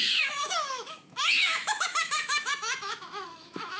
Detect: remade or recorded remade